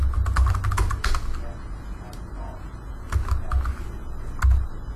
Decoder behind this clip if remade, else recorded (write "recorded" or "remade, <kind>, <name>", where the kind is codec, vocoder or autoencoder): recorded